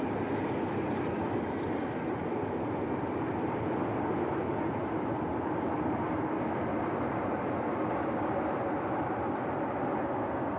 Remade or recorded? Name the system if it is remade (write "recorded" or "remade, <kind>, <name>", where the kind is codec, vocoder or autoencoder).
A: recorded